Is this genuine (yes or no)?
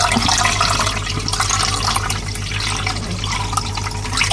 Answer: yes